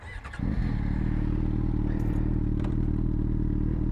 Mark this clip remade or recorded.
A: remade